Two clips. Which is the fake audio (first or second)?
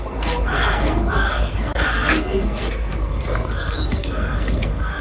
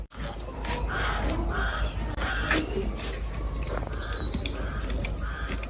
first